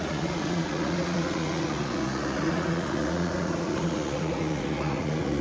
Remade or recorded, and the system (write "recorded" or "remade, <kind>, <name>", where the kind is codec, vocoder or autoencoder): remade, vocoder, Vocos